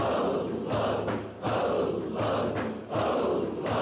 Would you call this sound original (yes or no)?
yes